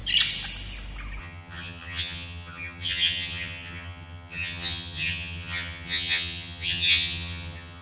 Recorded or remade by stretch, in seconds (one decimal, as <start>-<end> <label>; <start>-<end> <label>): 0.0-1.2 recorded; 1.2-7.8 remade